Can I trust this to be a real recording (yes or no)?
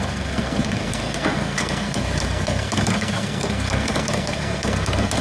no